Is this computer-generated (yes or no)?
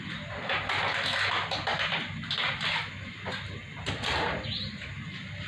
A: no